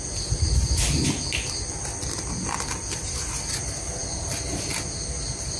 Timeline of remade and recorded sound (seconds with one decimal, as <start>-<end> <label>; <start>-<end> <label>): 0.0-5.6 recorded